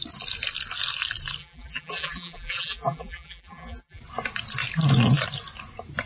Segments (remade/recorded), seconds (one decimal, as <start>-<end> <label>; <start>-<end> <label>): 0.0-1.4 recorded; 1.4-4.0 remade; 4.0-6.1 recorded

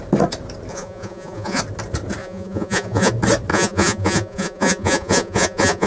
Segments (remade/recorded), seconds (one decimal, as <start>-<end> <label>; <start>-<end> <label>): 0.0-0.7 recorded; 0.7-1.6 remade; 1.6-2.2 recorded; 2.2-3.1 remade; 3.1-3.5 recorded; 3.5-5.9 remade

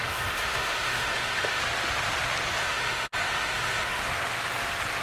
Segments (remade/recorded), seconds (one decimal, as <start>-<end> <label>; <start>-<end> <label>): 0.0-1.6 remade; 1.6-2.6 recorded; 2.6-4.0 remade; 4.0-5.0 recorded

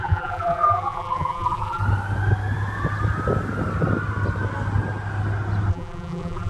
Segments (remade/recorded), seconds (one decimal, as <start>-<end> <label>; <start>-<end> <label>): 0.0-1.8 remade; 1.8-5.7 recorded; 5.7-6.5 remade